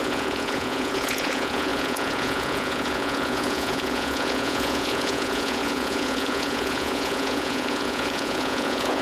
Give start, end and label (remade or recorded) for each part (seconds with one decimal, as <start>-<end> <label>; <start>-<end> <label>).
0.0-9.0 remade